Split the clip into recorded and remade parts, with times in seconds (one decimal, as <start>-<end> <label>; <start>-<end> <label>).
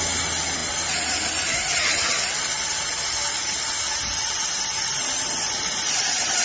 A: 0.0-6.4 recorded